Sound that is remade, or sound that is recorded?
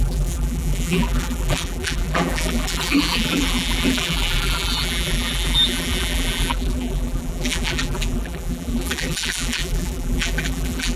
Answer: remade